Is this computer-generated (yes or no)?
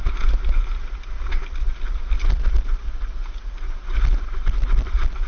no